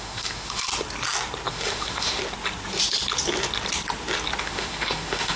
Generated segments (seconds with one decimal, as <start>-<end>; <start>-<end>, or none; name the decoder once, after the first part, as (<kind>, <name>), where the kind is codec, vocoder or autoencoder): 0.0-0.7 (autoencoder, DAC-VAE); 1.5-2.2; 4.4-5.4